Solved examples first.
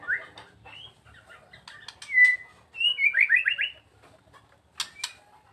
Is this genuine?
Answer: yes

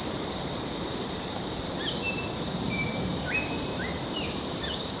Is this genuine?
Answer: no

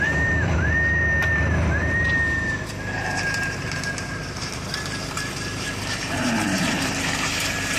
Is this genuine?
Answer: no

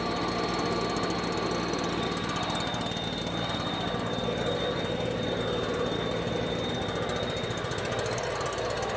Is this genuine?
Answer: yes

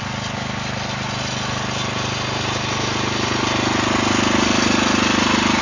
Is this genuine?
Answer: yes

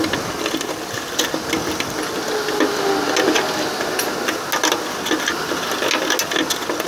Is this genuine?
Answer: yes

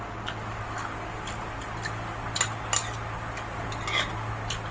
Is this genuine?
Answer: yes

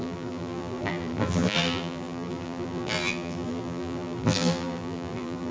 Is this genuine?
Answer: no